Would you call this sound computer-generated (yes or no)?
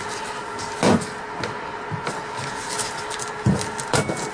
no